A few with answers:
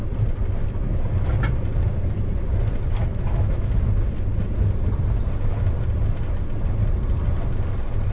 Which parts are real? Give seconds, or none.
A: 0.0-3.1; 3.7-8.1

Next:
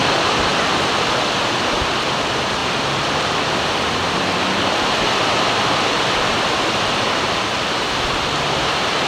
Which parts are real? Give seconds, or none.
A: 0.0-2.6; 7.6-9.1

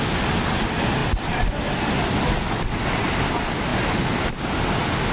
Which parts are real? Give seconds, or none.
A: 0.0-5.1

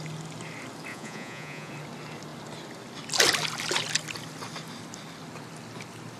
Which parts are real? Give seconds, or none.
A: 0.0-0.9; 1.7-6.2

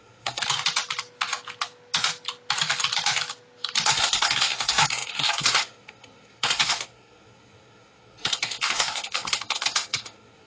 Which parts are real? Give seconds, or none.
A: 0.4-3.9